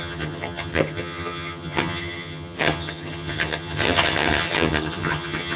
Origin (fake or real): fake